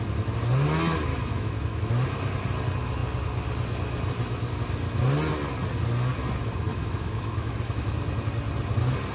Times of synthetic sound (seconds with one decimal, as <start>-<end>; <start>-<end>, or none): 1.1-1.9; 6.7-7.9

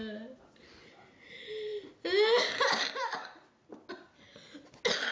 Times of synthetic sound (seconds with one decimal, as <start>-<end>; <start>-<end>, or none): none

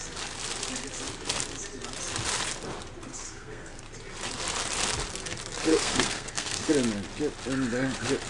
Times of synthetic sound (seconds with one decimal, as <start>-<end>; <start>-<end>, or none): 3.1-3.8; 5.7-6.7

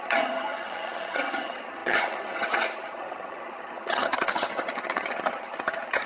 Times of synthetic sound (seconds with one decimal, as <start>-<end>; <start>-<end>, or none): 0.0-6.1

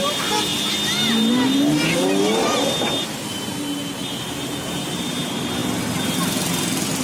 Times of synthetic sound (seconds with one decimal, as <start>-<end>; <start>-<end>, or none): none

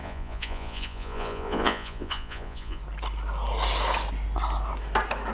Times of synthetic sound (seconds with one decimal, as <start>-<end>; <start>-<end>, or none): 0.0-2.8

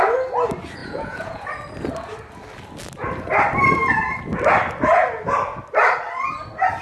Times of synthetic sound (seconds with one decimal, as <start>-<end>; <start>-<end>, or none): 0.8-1.5